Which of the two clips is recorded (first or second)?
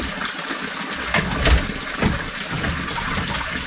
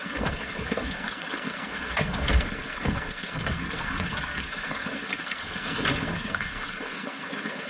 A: first